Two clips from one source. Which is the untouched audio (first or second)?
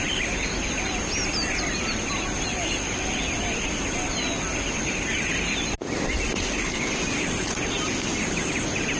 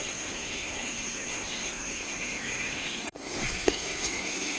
first